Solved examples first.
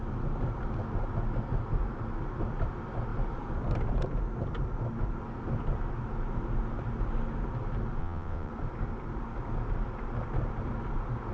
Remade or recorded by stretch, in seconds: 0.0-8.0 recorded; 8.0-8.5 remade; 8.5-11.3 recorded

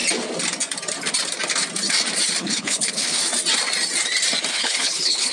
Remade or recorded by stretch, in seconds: 0.0-2.4 recorded; 2.4-3.2 remade; 3.2-4.5 recorded; 4.5-5.3 remade

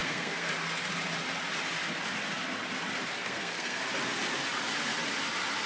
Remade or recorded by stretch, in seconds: 0.0-0.5 remade; 0.5-3.2 recorded; 3.2-3.8 remade; 3.8-5.7 recorded

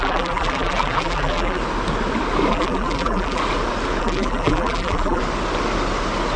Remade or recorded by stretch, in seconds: 0.0-1.6 remade; 1.6-2.5 recorded; 2.5-3.4 remade; 3.4-4.0 recorded; 4.0-5.2 remade; 5.2-6.4 recorded